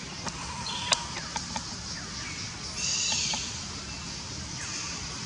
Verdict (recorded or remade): recorded